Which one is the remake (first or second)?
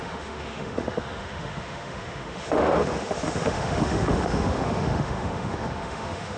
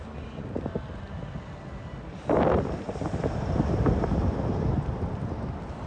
first